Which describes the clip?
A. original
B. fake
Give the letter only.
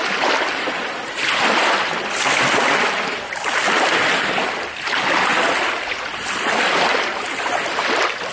A